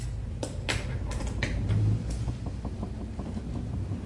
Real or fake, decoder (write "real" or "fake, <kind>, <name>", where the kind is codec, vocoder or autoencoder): real